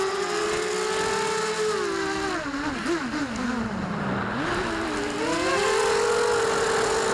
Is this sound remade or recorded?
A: recorded